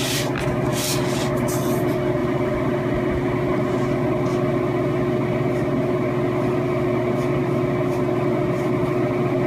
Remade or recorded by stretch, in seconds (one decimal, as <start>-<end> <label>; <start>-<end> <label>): 0.0-2.2 recorded; 2.2-2.8 remade; 2.8-9.5 recorded